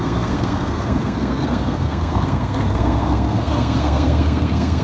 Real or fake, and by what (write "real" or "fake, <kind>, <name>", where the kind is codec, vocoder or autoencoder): fake, codec, SNAC